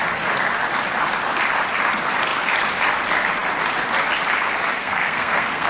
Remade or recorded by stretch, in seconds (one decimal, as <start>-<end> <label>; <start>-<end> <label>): 0.0-4.8 recorded; 4.8-5.7 remade